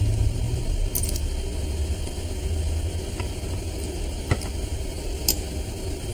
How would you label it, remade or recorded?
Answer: recorded